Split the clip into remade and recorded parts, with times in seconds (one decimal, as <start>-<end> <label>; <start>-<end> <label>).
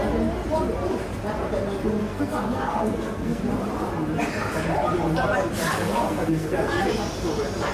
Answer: 0.0-2.0 recorded; 2.0-3.4 remade; 3.4-5.7 recorded; 5.7-6.9 remade; 6.9-7.7 recorded